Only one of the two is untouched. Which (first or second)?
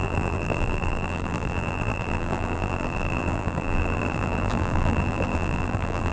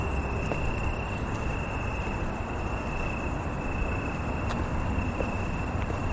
second